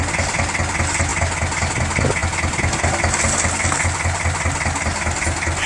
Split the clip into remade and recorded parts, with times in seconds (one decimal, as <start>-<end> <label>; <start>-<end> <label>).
0.0-5.7 recorded